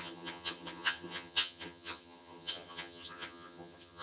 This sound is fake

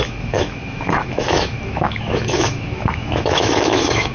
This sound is fake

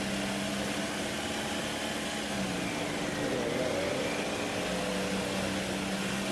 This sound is real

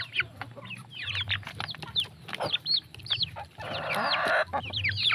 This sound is fake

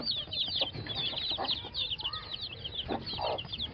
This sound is real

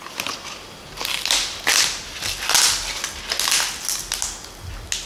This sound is real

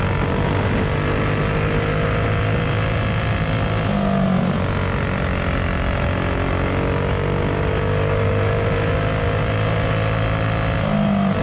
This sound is real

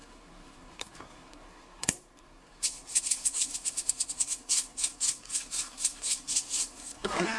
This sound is fake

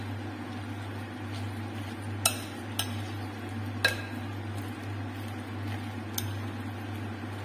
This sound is real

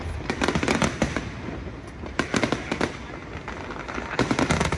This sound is real